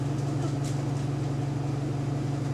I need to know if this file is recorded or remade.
recorded